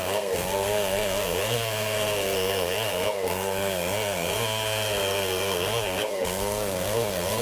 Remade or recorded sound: remade